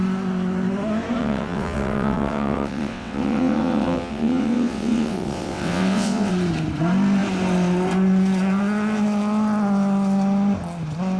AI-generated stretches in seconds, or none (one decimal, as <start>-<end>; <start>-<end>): 1.2-6.3